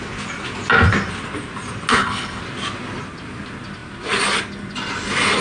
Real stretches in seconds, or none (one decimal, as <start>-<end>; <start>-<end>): 0.0-1.9; 2.4-5.4

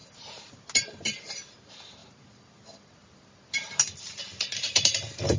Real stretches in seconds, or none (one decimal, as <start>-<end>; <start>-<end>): 0.0-5.4

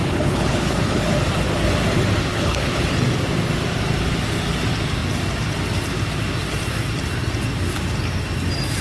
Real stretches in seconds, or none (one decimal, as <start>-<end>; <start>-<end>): 1.0-2.3; 2.9-8.8

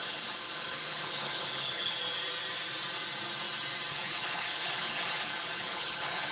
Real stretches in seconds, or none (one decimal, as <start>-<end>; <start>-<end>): 1.9-3.9